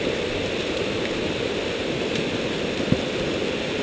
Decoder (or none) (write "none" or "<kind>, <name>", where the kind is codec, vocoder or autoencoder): none